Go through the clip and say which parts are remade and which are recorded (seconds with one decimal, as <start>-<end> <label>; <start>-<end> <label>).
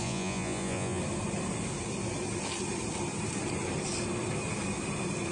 0.0-1.0 remade; 1.0-5.3 recorded